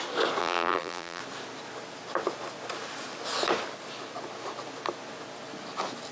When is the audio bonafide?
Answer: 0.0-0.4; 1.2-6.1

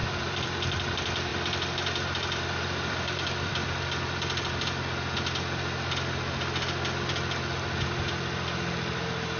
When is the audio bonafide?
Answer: 0.9-1.3; 3.5-9.4